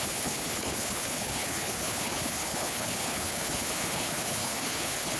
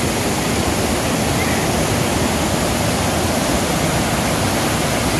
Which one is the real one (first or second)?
second